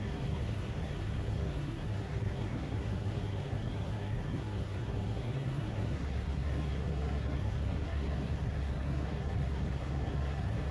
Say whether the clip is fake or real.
fake